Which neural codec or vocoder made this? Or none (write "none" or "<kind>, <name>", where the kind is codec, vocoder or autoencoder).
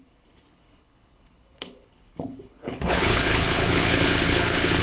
codec, HILCodec